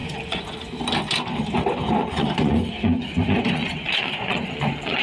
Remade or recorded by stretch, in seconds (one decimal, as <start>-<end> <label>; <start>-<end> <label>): 0.0-0.8 remade; 0.8-2.0 recorded; 2.0-5.0 remade